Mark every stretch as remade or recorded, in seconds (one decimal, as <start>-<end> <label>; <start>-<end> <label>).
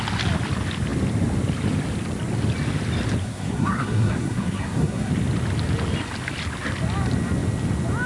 0.0-3.2 recorded; 3.2-5.1 remade; 5.1-8.1 recorded